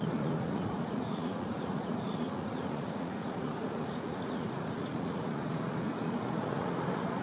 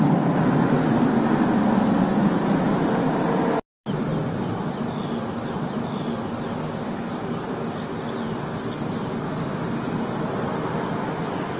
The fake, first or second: first